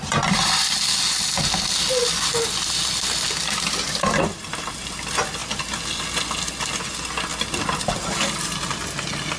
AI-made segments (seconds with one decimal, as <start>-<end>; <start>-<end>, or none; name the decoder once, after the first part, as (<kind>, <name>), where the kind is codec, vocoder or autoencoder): none